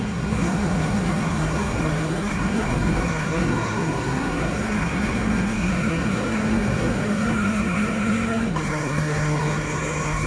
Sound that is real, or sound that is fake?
fake